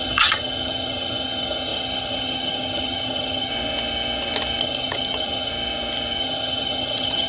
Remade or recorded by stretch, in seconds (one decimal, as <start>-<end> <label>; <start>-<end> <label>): 0.0-3.5 remade; 3.5-4.6 recorded; 4.6-5.5 remade; 5.5-6.2 recorded; 6.2-7.3 remade